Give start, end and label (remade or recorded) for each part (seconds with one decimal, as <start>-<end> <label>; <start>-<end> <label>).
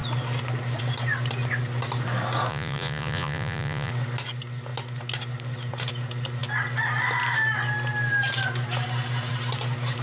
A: 0.0-2.5 recorded; 2.5-3.9 remade; 3.9-10.0 recorded